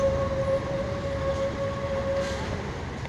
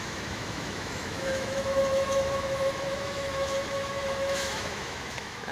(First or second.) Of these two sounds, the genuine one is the first